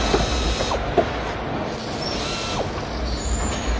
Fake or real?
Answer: real